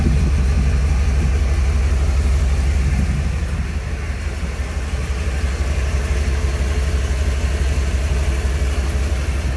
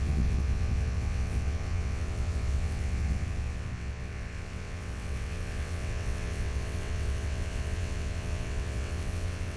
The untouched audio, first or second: first